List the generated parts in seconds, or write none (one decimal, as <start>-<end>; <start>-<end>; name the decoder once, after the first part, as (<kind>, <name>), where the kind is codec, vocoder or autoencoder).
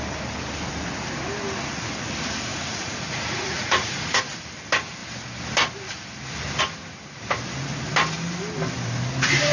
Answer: 2.5-4.2 (vocoder, Vocos)